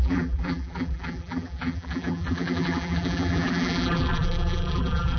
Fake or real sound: fake